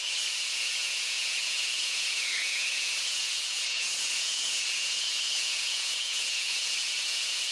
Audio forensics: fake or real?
fake